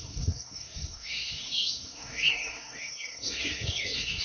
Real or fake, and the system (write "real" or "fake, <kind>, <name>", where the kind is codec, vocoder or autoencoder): fake, codec, SNAC